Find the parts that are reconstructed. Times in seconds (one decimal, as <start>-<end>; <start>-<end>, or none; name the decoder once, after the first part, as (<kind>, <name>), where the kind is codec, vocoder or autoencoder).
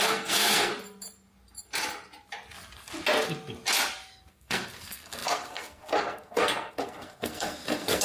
0.0-0.7 (codec, SNAC); 4.3-8.0